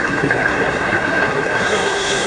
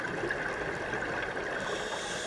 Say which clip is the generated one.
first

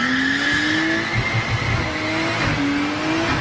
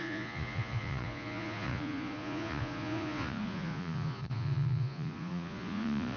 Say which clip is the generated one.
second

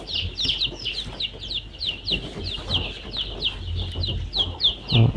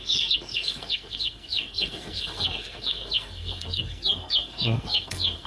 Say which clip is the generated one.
second